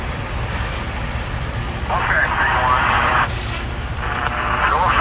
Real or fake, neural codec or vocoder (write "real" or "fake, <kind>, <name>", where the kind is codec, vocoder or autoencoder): fake, vocoder, BigVGAN v2